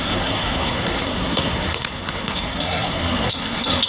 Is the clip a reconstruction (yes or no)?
yes